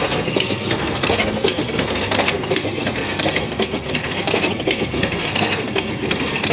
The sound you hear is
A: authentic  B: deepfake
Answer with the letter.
B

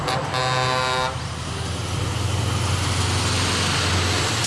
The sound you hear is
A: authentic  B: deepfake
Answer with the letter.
A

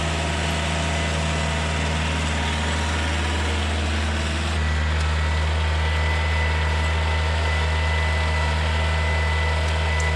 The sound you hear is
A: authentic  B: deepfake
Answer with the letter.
A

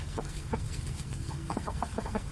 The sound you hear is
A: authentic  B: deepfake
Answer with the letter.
B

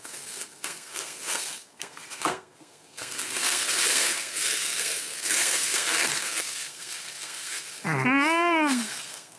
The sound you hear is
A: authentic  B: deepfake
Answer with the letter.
B